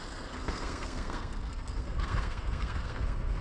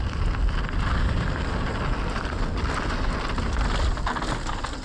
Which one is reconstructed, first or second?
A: first